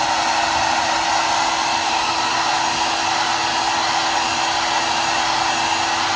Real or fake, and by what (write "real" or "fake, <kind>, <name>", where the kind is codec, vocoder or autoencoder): real